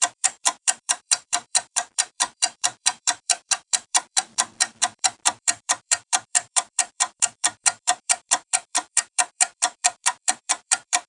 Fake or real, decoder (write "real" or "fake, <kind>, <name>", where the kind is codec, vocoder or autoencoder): fake, vocoder, BigVGAN v2